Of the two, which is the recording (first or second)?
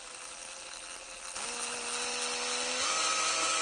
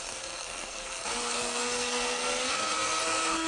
first